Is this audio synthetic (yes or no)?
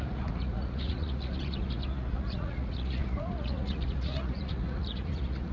yes